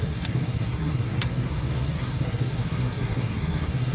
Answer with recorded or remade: remade